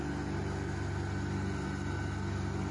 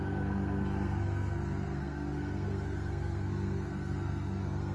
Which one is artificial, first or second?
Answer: second